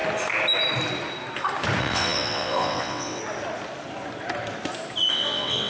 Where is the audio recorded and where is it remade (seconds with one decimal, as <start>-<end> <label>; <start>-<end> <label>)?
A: 0.0-1.8 recorded; 1.8-3.2 remade; 3.2-5.1 recorded; 5.1-5.7 remade